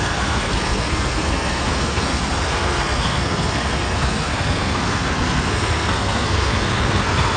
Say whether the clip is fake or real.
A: fake